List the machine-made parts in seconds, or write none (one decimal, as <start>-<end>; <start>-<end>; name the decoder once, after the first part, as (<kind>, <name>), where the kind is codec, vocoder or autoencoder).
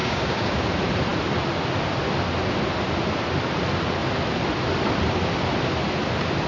0.0-0.7 (codec, DAC)